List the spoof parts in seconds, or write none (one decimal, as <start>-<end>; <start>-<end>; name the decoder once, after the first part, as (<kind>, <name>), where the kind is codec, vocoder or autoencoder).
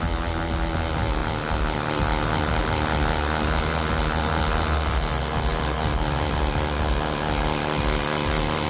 1.2-2.6 (vocoder, BigVGAN v2); 5.5-6.3